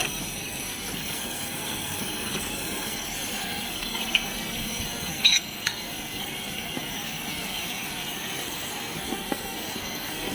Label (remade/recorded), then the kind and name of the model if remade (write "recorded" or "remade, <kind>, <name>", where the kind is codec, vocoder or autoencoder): remade, codec, SNAC